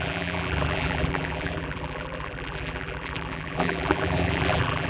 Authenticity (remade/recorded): remade